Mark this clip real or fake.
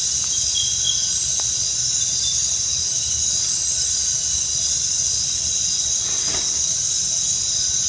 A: fake